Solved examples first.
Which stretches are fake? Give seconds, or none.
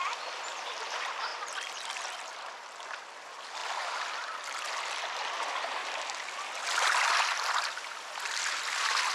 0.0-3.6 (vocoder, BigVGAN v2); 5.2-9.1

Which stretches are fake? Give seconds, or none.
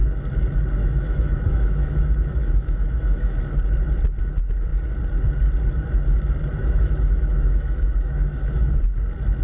0.8-3.4 (autoencoder, DAC-VAE); 6.6-8.8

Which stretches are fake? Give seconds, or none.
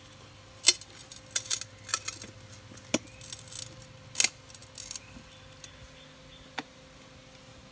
none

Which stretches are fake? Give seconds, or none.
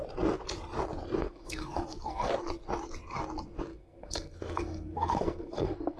1.2-2.3 (codec, SNAC); 3.7-6.0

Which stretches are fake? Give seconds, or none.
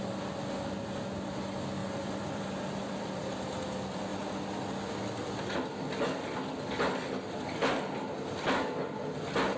1.8-3.2 (vocoder, BigVGAN v2)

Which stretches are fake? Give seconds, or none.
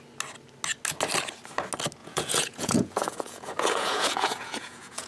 2.0-5.1 (vocoder, Vocos)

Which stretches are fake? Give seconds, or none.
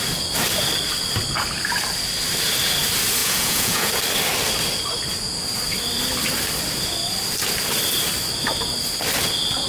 3.2-3.9 (vocoder, Vocos)